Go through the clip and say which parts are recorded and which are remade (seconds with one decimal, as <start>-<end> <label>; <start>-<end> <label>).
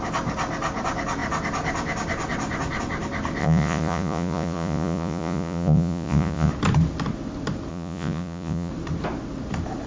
0.0-3.4 recorded; 3.4-6.5 remade; 6.5-7.7 recorded; 7.7-8.7 remade; 8.7-9.9 recorded